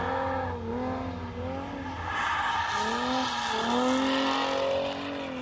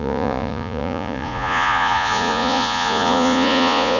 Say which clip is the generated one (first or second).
second